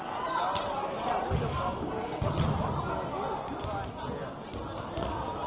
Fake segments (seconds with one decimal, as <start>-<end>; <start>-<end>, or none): 1.4-2.3

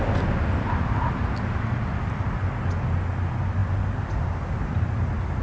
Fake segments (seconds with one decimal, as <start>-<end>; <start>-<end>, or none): none

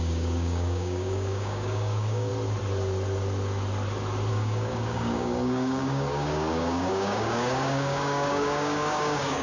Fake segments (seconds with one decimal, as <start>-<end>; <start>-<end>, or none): 0.0-2.3; 4.3-9.4

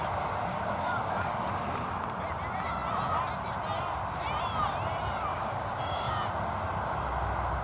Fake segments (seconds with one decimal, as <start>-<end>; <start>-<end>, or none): 0.5-1.5; 5.3-6.1